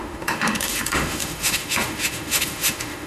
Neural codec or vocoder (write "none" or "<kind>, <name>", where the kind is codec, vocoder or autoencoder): autoencoder, DAC-VAE